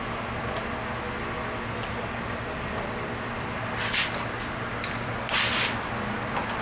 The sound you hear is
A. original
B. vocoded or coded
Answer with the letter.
A